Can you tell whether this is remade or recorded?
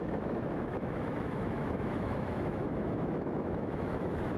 remade